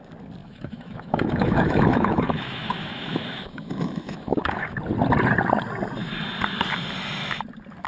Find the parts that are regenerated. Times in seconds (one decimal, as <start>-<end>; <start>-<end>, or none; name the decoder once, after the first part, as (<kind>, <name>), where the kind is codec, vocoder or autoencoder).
0.4-4.8 (autoencoder, DAC-VAE)